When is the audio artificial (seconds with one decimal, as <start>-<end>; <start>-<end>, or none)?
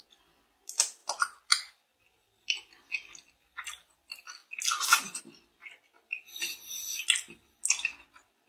none